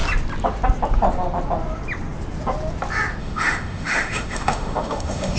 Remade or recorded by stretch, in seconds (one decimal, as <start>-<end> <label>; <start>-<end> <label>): 0.0-3.2 recorded; 3.2-5.4 remade